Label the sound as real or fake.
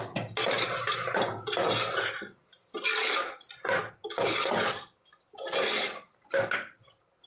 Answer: real